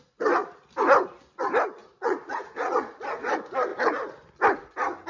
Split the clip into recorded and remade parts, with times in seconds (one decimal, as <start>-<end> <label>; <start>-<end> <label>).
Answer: 0.0-1.8 recorded; 1.8-3.3 remade; 3.3-5.1 recorded